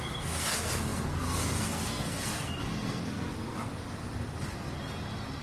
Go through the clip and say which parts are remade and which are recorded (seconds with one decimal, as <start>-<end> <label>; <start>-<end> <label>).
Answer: 0.0-3.7 remade; 3.7-5.4 recorded